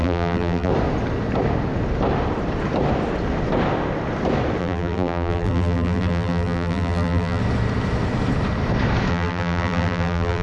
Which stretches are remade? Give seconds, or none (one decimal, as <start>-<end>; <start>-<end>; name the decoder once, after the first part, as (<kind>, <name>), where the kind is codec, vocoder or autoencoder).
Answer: 0.0-0.7 (vocoder, BigVGAN v2); 4.6-7.4; 9.1-10.4